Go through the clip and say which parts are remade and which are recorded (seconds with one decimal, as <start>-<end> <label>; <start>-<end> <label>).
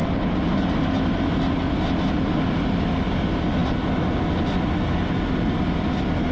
0.0-6.3 recorded